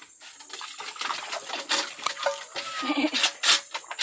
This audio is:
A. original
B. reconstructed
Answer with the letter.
A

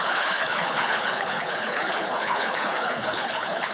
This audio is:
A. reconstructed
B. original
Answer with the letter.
A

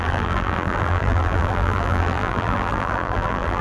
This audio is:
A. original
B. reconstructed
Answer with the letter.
B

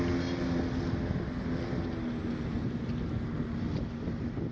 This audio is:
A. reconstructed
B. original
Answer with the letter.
B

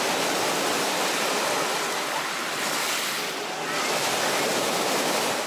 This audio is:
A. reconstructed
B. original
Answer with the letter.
B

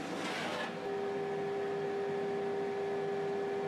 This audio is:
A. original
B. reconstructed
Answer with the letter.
A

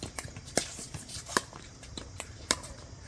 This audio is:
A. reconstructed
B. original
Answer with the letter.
A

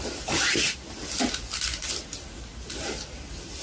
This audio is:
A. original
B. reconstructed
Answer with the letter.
B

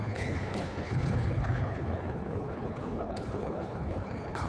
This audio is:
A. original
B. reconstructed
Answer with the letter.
B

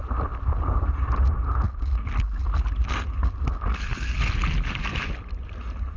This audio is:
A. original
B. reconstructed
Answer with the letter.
A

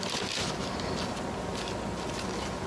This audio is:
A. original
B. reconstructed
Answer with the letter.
A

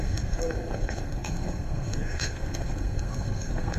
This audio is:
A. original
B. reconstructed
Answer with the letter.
B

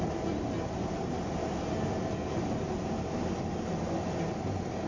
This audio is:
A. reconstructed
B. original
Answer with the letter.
B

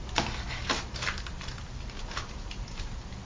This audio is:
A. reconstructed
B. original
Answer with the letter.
B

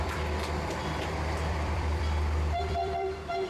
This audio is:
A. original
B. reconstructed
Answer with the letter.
B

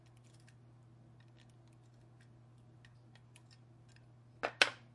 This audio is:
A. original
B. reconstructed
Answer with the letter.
A